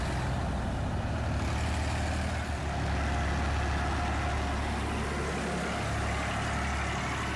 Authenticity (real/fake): real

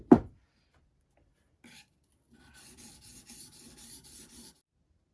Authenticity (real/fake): real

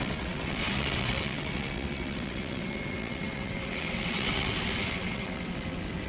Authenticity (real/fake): fake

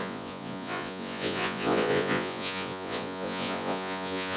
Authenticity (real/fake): fake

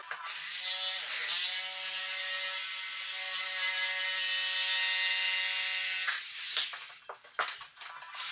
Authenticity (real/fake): real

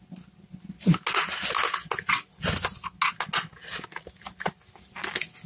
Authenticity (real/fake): real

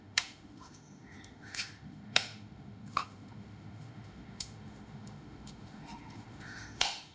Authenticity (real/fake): fake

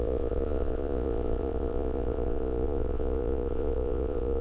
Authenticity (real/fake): fake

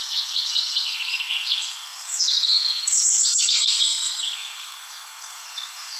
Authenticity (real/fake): fake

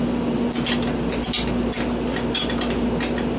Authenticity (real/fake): real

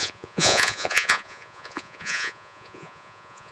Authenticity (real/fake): fake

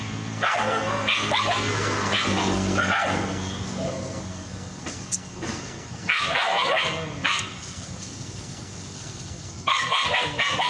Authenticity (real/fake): fake